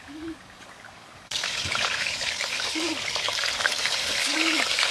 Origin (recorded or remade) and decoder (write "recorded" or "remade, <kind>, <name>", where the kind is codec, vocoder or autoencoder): remade, codec, DAC